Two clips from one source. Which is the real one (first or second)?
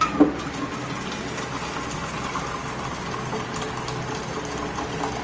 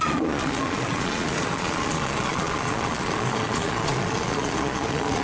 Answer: first